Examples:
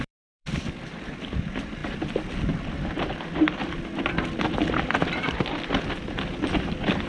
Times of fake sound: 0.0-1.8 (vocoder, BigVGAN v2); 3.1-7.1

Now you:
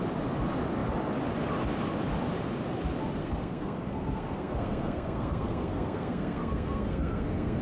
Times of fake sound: 3.2-7.6 (codec, SNAC)

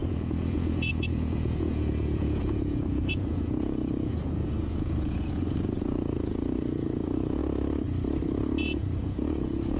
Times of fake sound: 0.0-7.4 (vocoder, Vocos); 8.6-9.8

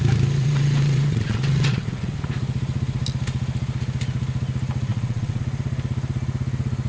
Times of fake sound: 0.4-2.2 (vocoder, WaveNeXt); 4.9-5.4

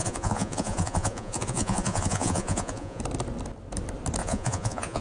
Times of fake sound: 0.0-3.0 (vocoder, Vocos); 4.2-5.0

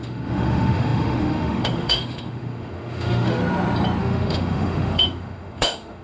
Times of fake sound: 0.0-3.4 (autoencoder, DAC-VAE); 4.0-6.0

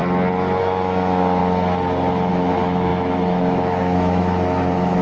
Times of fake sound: 0.6-1.4 (autoencoder, DAC-VAE); 2.3-5.0